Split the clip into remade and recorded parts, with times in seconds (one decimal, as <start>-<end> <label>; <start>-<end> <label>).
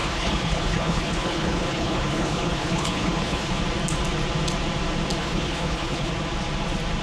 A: 0.0-3.6 remade; 3.6-5.2 recorded; 5.2-6.1 remade; 6.1-7.0 recorded